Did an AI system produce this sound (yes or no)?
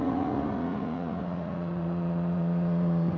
yes